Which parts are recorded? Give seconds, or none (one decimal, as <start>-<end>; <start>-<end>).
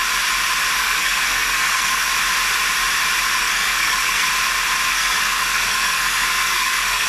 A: 0.0-0.8; 2.1-3.4; 4.3-4.9